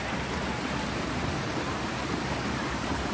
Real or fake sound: fake